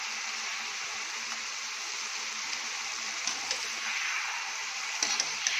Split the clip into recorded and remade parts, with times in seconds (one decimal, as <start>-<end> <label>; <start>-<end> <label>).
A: 0.0-0.5 remade; 0.5-3.8 recorded; 3.8-5.6 remade